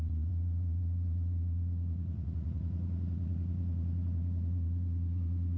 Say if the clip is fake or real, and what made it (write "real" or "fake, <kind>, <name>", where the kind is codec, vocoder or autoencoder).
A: fake, vocoder, Vocos